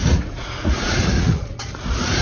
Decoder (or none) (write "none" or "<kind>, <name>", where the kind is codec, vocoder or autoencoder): vocoder, Vocos